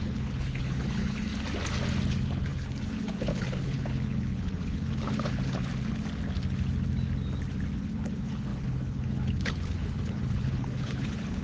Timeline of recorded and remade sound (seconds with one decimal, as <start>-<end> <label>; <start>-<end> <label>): 0.0-1.3 remade; 1.3-2.1 recorded; 2.1-5.7 remade; 5.7-7.8 recorded; 7.8-11.4 remade